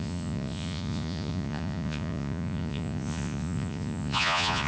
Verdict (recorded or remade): remade